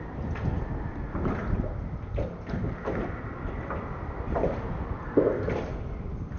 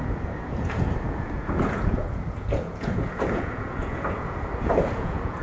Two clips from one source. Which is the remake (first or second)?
second